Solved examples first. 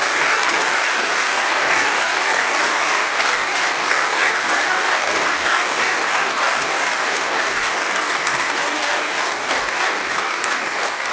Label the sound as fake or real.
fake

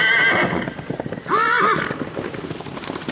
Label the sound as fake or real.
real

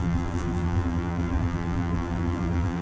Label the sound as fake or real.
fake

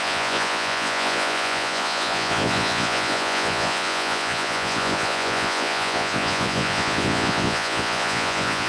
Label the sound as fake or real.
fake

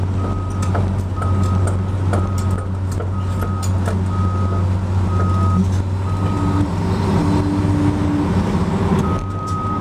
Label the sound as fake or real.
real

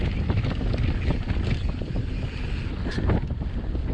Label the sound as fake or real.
real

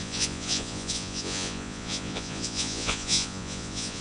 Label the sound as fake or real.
fake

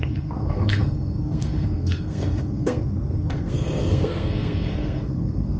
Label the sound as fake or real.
fake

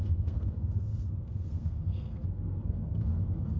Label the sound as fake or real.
fake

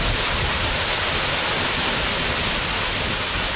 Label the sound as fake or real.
fake